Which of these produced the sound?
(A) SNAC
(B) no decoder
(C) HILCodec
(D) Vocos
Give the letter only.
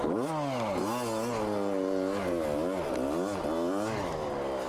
B